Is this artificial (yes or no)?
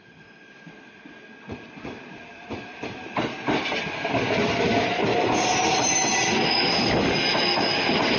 no